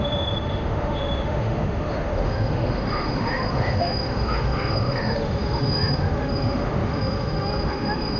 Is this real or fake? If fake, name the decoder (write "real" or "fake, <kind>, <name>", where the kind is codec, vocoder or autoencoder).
fake, autoencoder, DAC-VAE